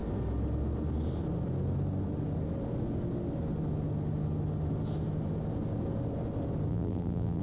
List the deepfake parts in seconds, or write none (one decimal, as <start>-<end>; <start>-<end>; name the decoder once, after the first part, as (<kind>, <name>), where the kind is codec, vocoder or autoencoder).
6.7-7.4 (vocoder, BigVGAN v2)